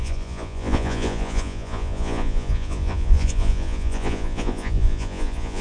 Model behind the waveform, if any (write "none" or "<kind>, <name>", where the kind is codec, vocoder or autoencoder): vocoder, Vocos